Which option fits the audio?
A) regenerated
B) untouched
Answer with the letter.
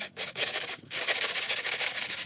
A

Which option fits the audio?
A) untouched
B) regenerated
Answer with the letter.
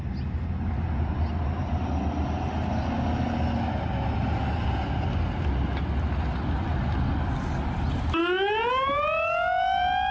A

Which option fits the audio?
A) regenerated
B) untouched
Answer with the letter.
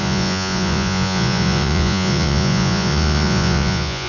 A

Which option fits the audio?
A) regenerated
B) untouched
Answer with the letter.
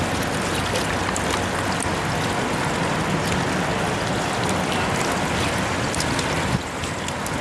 B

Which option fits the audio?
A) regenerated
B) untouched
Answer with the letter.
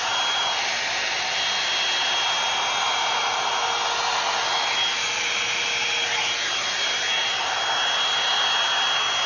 B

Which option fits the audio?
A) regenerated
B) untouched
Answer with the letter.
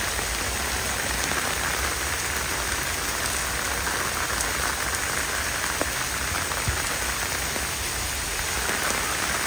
B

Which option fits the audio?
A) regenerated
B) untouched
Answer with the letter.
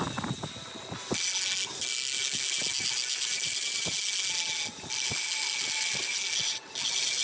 B